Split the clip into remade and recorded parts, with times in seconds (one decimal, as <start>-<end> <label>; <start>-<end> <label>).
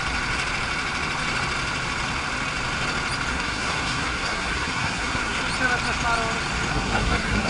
0.0-3.3 recorded; 3.3-5.4 remade; 5.4-6.7 recorded; 6.7-7.5 remade